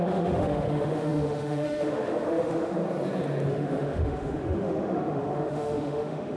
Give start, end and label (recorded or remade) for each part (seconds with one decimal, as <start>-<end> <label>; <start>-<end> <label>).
0.0-2.8 remade; 2.8-3.5 recorded; 3.5-6.4 remade